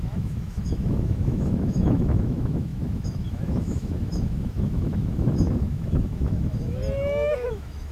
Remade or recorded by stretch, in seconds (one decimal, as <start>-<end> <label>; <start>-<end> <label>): 0.0-6.8 remade; 6.8-7.5 recorded; 7.5-7.9 remade